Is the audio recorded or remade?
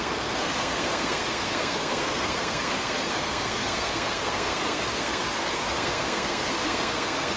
remade